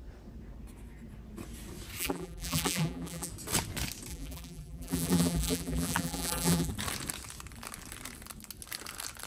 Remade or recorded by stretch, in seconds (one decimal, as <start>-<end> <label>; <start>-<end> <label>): 0.0-2.0 recorded; 2.0-3.3 remade; 3.3-4.1 recorded; 4.1-6.7 remade; 6.7-9.3 recorded

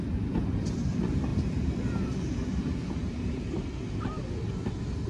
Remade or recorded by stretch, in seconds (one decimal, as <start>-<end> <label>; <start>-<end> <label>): 0.0-1.3 recorded; 1.3-4.4 remade; 4.4-5.1 recorded

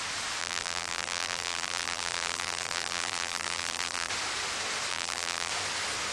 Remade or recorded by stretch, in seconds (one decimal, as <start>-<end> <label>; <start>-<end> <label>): 0.0-0.4 recorded; 0.4-4.1 remade; 4.1-4.9 recorded; 4.9-5.5 remade; 5.5-6.1 recorded

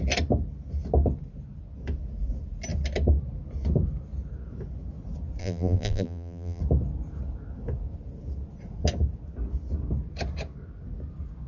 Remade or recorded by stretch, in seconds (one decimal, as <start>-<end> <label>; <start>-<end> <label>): 0.0-5.4 recorded; 5.4-6.6 remade; 6.6-11.5 recorded

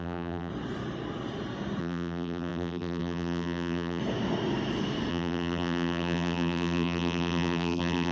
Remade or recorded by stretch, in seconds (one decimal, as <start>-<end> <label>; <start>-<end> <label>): 0.0-0.5 remade; 0.5-1.8 recorded; 1.8-4.0 remade; 4.0-5.1 recorded; 5.1-8.1 remade

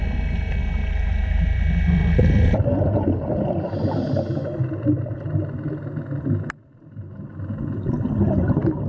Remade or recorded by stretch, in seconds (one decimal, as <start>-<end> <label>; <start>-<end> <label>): 0.0-0.6 recorded; 0.6-1.6 remade; 1.6-8.9 recorded